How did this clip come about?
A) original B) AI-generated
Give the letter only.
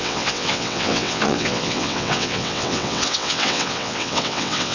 B